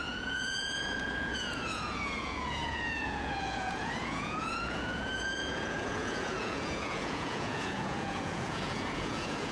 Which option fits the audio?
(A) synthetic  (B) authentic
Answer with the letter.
A